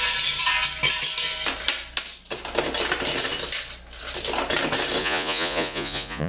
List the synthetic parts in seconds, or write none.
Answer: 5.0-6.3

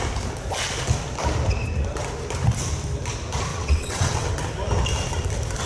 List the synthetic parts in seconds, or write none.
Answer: 3.5-4.3

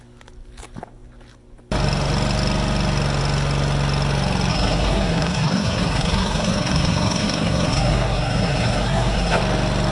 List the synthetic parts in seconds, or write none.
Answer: 4.5-9.4

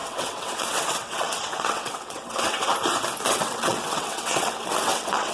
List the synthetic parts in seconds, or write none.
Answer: 0.0-2.7; 3.3-5.3